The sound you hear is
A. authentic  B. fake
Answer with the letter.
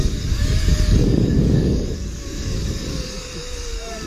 B